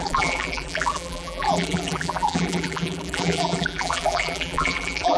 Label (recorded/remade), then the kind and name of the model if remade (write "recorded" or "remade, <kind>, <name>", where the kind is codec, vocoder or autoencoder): remade, vocoder, BigVGAN v2